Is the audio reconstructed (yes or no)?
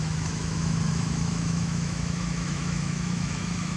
yes